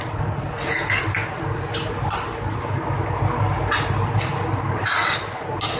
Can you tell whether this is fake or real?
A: real